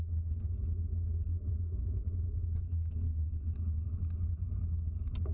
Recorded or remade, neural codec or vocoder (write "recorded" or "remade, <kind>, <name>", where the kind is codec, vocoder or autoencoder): recorded